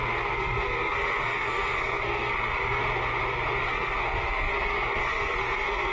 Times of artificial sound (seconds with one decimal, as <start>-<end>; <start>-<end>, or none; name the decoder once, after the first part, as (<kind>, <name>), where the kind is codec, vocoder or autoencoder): 0.0-2.8 (codec, SNAC); 3.6-5.9